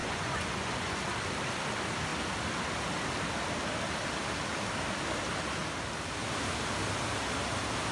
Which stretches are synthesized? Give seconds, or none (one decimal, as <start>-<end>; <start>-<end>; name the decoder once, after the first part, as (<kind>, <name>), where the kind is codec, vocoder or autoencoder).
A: 0.0-1.0 (vocoder, Vocos)

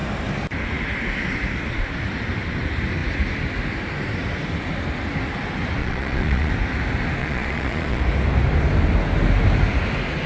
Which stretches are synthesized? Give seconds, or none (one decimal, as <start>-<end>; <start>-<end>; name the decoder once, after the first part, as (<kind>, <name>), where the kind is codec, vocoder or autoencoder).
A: 5.8-6.5 (vocoder, Vocos); 7.2-8.0

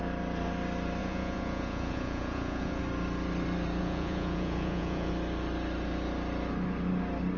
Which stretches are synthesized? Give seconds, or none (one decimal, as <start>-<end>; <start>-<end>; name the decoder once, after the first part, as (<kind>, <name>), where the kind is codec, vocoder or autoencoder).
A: 1.0-2.8 (vocoder, Vocos); 3.8-5.1

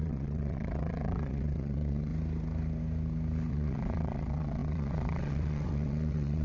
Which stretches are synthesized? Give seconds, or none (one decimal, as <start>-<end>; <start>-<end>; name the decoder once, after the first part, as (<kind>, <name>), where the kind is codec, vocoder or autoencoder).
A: 0.0-2.1 (vocoder, WaveNeXt); 3.5-6.4